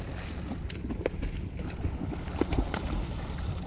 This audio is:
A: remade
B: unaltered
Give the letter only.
B